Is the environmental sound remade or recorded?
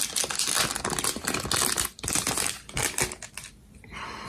recorded